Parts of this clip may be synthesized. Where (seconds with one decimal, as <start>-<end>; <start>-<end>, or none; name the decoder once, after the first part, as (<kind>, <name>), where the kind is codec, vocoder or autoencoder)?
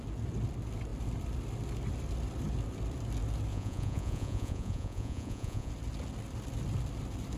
3.5-5.7 (vocoder, Vocos)